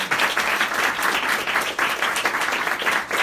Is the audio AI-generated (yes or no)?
no